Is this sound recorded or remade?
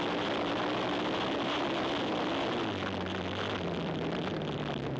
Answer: recorded